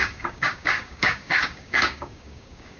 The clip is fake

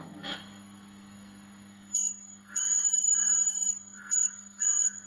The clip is fake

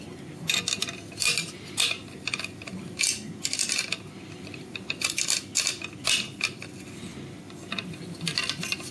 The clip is real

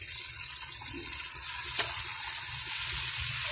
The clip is fake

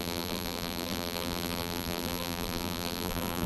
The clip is fake